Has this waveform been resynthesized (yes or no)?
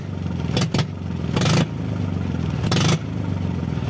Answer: no